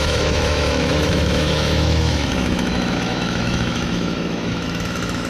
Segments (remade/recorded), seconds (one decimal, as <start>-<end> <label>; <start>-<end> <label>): 0.0-5.3 remade